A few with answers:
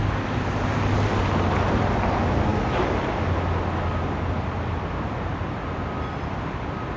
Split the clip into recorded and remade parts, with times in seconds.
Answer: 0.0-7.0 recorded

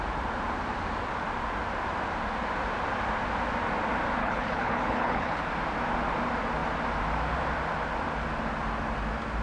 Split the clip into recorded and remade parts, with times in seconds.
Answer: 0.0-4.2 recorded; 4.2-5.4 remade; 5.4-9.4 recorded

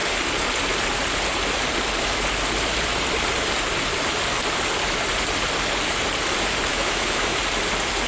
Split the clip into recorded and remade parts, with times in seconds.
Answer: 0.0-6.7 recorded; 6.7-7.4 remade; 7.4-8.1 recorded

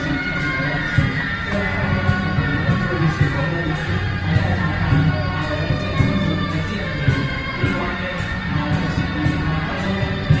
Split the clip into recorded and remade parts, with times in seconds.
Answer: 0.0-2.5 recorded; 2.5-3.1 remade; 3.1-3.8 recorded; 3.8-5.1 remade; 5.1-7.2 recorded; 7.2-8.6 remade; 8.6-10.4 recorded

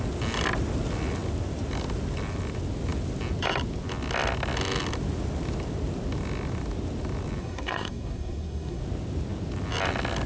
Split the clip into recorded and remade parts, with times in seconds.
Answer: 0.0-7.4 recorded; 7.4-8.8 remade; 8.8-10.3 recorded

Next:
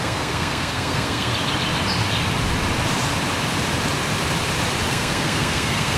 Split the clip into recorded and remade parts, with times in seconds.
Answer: 0.0-1.3 remade; 1.3-4.9 recorded; 4.9-6.0 remade